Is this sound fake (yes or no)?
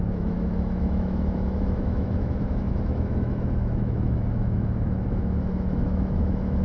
yes